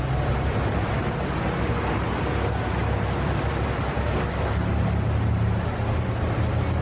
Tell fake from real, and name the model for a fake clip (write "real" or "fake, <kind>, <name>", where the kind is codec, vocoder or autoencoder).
real